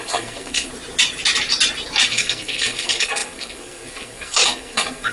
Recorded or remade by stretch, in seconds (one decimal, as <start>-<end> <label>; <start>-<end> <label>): 0.0-0.7 remade; 0.7-2.1 recorded; 2.1-5.1 remade